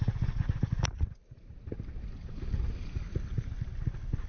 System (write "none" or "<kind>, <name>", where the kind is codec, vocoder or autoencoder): none